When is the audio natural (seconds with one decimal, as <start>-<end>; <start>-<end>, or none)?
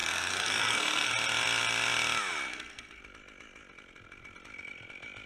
1.1-2.5; 3.0-5.3